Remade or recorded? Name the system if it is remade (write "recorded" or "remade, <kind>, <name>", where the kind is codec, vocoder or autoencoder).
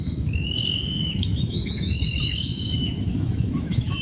remade, autoencoder, DAC-VAE